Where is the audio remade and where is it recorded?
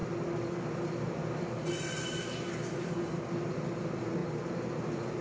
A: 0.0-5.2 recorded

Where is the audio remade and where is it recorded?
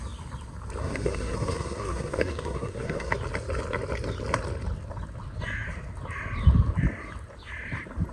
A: 0.0-0.8 recorded; 0.8-3.1 remade; 3.1-8.1 recorded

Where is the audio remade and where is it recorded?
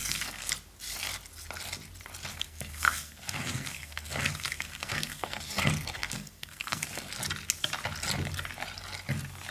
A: 0.0-0.5 remade; 0.5-2.3 recorded; 2.3-7.1 remade; 7.1-9.5 recorded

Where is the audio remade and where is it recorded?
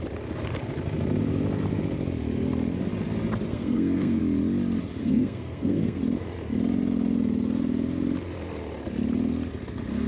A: 0.0-3.5 recorded; 3.5-4.2 remade; 4.2-5.0 recorded; 5.0-6.0 remade; 6.0-10.1 recorded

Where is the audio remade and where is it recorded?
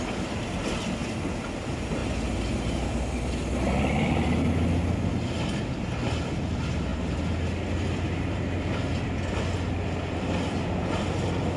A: 0.0-11.6 recorded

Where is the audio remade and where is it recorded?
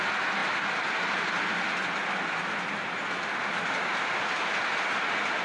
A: 0.0-5.4 recorded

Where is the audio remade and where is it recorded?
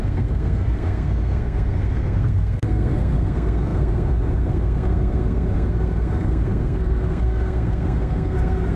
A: 0.0-8.8 remade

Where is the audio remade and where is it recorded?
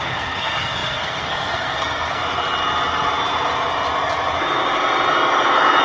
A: 0.0-2.2 remade; 2.2-5.8 recorded